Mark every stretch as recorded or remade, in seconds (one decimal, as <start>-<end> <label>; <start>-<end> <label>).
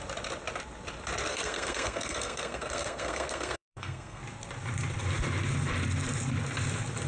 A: 0.0-1.3 recorded; 1.3-4.2 remade; 4.2-7.1 recorded